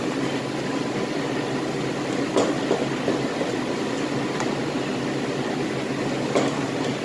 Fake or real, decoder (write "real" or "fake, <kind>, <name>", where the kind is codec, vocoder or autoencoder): real